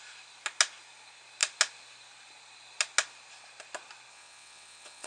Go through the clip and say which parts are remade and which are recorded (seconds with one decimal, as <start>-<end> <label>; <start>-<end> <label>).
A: 0.0-4.1 recorded; 4.1-5.1 remade